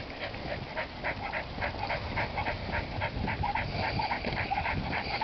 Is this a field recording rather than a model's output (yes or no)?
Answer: yes